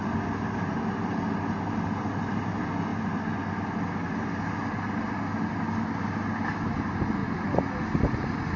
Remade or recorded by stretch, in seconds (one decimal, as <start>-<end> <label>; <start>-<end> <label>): 0.0-8.6 recorded